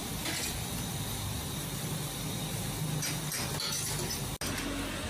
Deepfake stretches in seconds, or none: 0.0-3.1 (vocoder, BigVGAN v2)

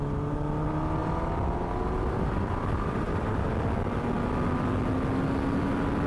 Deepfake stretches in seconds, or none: 1.0-3.5 (vocoder, BigVGAN v2)

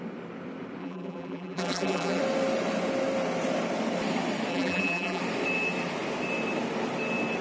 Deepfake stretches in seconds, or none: 0.8-2.2 (vocoder, BigVGAN v2); 4.5-5.2

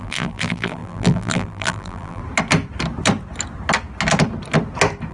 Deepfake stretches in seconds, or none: 0.0-2.2 (vocoder, BigVGAN v2)

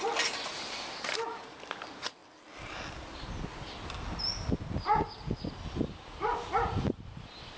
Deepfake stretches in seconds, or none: 0.5-1.4 (vocoder, BigVGAN v2)

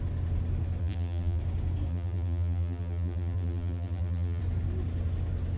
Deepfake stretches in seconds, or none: 0.8-1.4 (vocoder, BigVGAN v2); 1.9-4.4

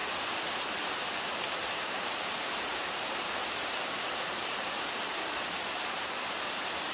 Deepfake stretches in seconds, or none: 0.9-6.9 (vocoder, BigVGAN v2)

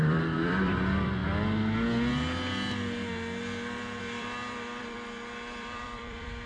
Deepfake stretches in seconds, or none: 0.0-1.2 (vocoder, BigVGAN v2); 4.0-6.5